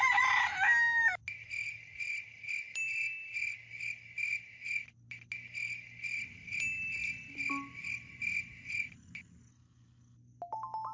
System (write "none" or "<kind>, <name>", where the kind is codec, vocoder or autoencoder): none